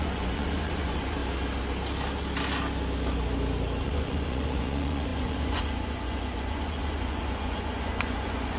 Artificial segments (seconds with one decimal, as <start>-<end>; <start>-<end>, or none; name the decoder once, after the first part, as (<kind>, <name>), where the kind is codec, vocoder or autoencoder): 0.0-1.2 (vocoder, Vocos); 3.8-8.6